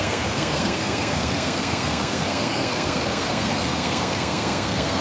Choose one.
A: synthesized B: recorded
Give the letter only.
A